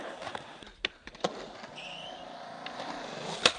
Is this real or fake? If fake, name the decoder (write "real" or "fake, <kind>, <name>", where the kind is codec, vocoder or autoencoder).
real